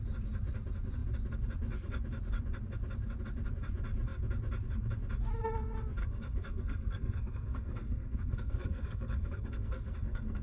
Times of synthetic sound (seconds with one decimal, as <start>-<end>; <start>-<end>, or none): 6.0-10.4

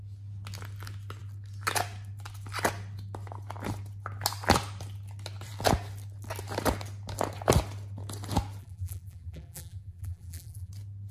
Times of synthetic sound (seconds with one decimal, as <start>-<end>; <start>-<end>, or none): 8.6-10.7

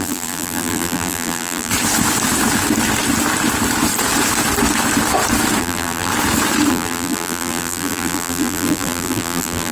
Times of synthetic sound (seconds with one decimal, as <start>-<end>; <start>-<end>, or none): 0.0-1.7; 5.6-6.1; 6.7-9.7